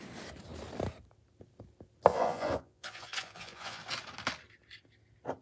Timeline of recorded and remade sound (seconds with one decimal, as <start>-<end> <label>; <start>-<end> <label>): 0.0-2.1 recorded; 2.1-3.8 remade; 3.8-5.4 recorded

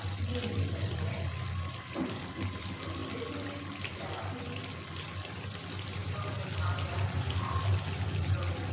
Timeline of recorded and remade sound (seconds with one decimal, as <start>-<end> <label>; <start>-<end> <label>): 0.0-8.7 recorded

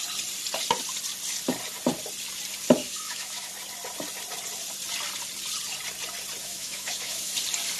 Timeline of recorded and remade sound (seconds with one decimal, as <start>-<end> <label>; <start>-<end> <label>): 0.0-2.8 recorded; 2.8-3.5 remade; 3.5-6.4 recorded; 6.4-7.3 remade; 7.3-7.8 recorded

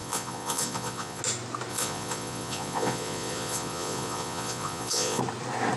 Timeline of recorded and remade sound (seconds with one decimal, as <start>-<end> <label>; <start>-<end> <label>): 0.0-1.2 remade; 1.2-1.7 recorded; 1.7-5.2 remade; 5.2-5.8 recorded

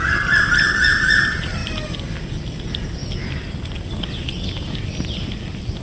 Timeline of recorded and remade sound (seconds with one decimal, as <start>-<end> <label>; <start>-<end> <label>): 0.0-5.8 recorded

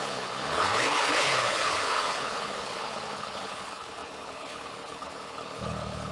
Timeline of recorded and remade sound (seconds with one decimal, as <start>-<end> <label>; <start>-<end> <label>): 0.0-6.1 remade